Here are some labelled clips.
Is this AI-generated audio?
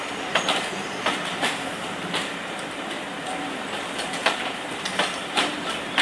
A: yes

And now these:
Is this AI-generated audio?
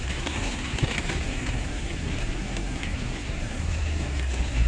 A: yes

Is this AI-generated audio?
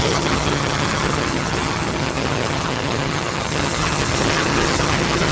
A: yes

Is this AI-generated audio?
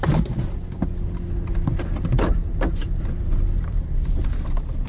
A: no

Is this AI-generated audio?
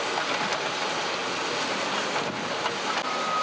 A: no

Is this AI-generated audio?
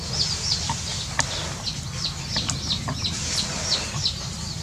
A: no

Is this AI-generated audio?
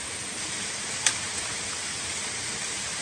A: no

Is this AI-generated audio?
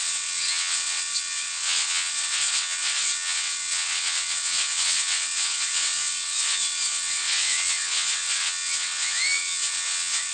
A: yes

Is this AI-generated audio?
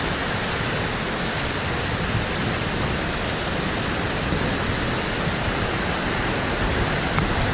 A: yes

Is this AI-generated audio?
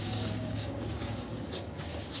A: yes